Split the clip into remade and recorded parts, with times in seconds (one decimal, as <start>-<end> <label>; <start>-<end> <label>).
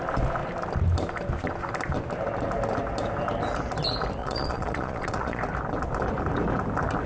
0.0-4.2 recorded; 4.2-5.4 remade; 5.4-7.1 recorded